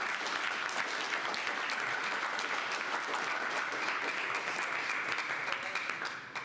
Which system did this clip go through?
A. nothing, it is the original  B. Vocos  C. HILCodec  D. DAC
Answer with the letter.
A